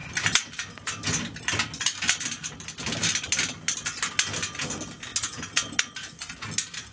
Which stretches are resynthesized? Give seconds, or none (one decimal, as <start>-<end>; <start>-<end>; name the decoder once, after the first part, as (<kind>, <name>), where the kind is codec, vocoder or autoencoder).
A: none